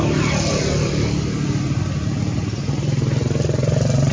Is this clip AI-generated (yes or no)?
no